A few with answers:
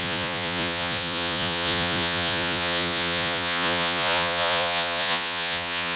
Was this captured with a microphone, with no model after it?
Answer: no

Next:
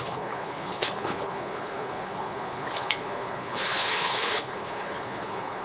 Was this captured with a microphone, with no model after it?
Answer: no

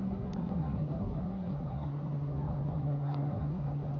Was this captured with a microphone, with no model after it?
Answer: no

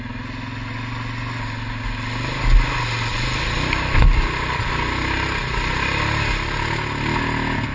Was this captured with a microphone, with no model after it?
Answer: yes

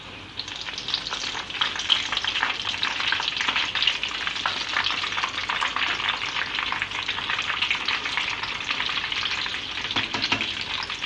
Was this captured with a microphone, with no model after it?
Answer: yes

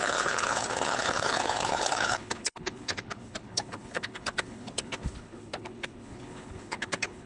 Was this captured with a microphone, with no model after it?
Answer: no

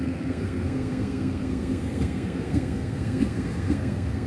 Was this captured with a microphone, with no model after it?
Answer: no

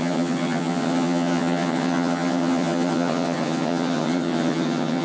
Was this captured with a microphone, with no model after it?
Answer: no